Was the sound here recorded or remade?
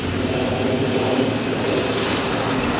recorded